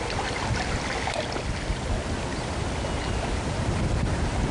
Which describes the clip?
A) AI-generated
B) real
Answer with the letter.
B